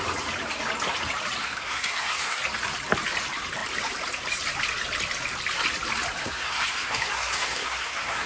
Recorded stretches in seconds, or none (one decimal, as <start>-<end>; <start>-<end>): 0.0-1.4; 2.4-6.2